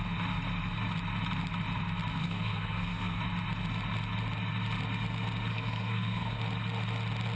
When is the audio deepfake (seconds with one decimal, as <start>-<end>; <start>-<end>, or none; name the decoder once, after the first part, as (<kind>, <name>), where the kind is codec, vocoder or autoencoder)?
2.2-3.2 (codec, SNAC); 5.5-6.4